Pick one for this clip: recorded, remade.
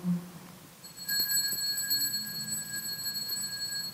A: recorded